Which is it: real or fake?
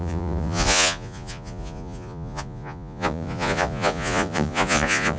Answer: fake